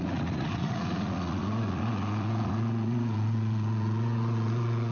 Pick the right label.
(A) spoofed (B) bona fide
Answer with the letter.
A